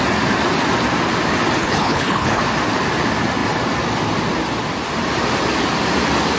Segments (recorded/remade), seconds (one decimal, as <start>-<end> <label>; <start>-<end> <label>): 0.0-1.6 recorded; 1.6-2.4 remade; 2.4-6.4 recorded